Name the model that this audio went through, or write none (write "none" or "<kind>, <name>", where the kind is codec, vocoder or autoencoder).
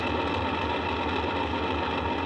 none